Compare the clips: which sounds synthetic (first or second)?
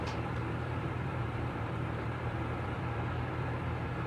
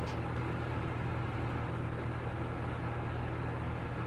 first